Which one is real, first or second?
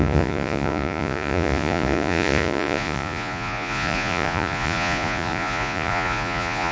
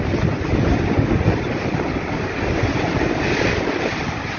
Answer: second